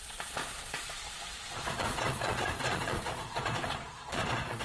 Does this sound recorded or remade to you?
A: remade